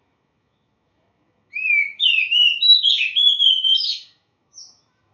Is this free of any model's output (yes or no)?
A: no